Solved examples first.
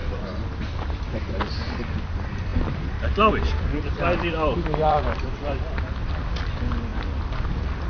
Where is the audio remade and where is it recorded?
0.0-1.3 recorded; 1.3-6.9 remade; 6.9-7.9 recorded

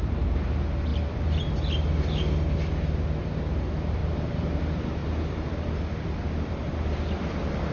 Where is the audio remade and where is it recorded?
0.0-0.9 recorded; 0.9-1.5 remade; 1.5-5.0 recorded; 5.0-7.7 remade

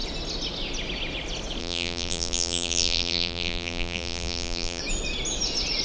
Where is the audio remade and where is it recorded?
0.0-1.6 recorded; 1.6-4.8 remade; 4.8-5.8 recorded